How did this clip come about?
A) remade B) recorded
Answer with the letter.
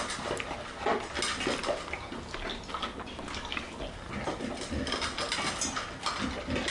B